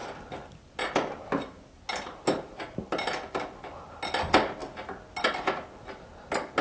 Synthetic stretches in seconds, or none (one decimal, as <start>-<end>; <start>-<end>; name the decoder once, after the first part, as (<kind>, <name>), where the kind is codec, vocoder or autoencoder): none